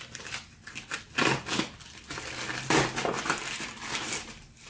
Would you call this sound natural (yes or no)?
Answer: yes